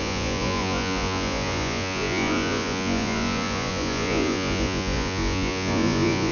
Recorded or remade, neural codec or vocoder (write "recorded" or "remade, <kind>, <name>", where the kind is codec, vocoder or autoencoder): remade, vocoder, Vocos